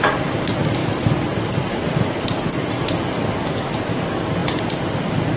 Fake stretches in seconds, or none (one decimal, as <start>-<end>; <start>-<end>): 0.8-3.0; 4.4-5.4